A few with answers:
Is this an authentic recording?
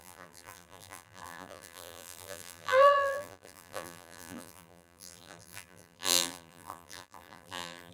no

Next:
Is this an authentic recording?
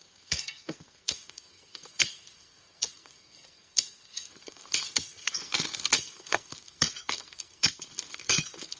no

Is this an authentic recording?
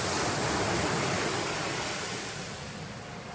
yes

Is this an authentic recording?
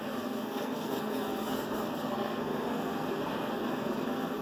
no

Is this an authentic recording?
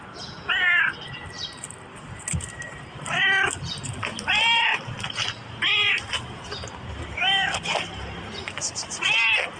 yes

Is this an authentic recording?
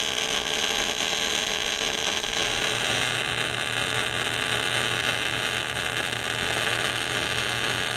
yes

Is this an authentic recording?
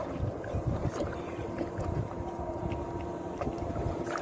no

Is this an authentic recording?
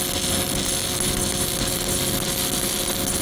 yes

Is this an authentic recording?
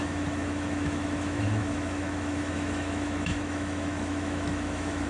no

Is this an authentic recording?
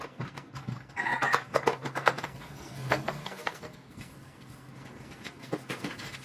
no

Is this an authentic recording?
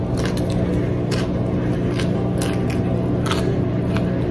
yes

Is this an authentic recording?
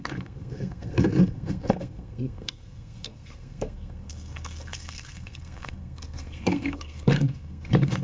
no